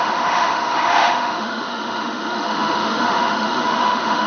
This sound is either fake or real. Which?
fake